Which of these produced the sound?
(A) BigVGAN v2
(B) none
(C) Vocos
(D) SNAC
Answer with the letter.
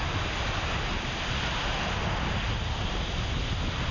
B